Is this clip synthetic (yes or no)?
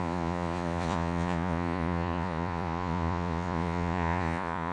yes